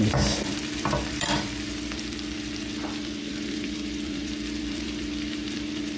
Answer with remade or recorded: remade